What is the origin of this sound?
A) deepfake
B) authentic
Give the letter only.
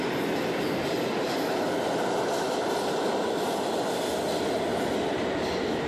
B